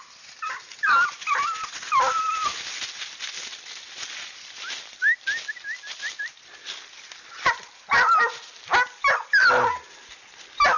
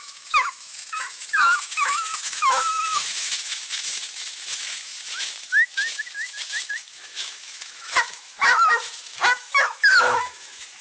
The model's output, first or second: second